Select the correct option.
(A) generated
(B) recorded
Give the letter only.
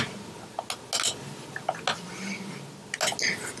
B